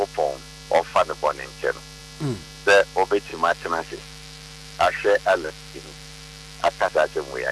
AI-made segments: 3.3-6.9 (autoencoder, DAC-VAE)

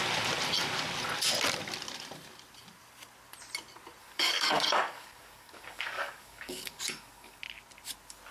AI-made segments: 4.0-7.4 (codec, DAC)

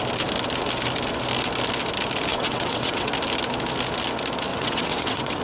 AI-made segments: 2.3-3.1 (vocoder, WaveNeXt); 4.5-5.4